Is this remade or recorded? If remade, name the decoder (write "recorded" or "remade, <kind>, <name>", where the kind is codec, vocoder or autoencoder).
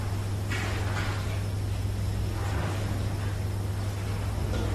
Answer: recorded